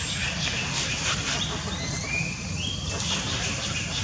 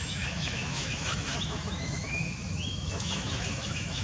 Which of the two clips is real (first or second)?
first